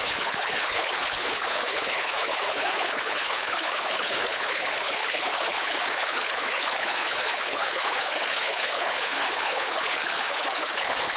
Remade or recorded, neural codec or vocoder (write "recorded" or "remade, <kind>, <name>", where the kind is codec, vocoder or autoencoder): remade, codec, HILCodec